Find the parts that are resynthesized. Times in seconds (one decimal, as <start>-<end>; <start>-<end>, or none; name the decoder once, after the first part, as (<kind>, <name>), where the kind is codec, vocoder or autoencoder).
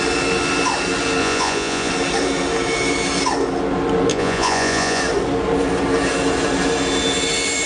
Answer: 1.2-1.9 (vocoder, Vocos); 4.1-5.0